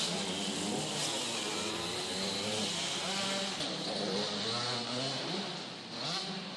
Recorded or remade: recorded